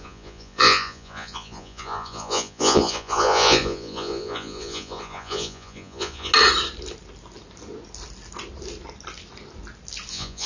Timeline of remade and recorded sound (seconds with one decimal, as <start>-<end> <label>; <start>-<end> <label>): 0.0-6.3 remade; 6.3-10.1 recorded; 10.1-10.5 remade